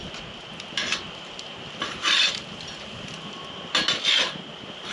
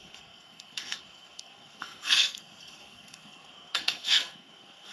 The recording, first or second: first